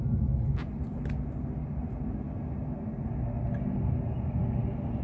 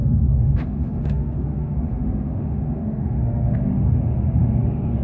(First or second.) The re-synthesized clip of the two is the second